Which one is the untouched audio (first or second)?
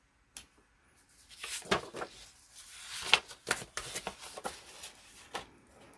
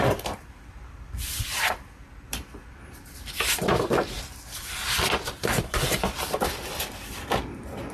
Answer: first